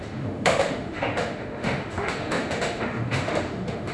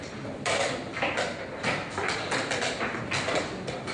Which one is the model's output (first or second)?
first